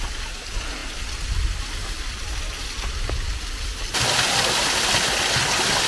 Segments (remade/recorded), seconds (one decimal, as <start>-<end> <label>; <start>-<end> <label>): 0.0-5.9 recorded